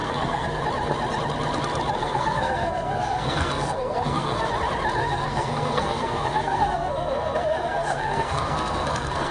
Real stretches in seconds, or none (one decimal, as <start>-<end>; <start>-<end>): 0.6-2.0; 4.5-5.0